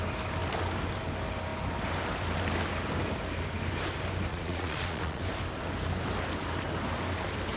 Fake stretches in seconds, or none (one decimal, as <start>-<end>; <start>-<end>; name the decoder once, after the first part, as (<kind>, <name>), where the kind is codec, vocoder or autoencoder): 4.3-5.2 (vocoder, Vocos)

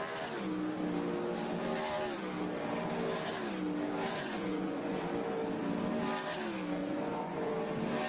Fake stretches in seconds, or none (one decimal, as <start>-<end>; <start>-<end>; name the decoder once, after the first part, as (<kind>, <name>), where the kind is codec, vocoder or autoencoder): 4.1-5.0 (vocoder, Vocos); 6.8-7.5

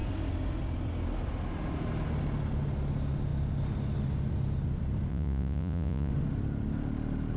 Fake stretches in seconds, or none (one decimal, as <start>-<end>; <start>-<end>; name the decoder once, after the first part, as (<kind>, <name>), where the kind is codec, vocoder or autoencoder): 5.1-6.1 (vocoder, Vocos)